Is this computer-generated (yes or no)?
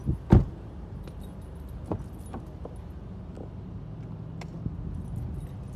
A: no